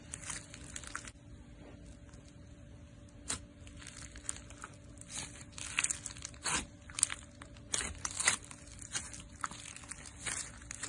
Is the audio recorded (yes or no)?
yes